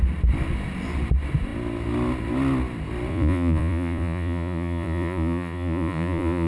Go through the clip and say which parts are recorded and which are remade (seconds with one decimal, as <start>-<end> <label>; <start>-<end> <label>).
0.0-3.1 recorded; 3.1-6.5 remade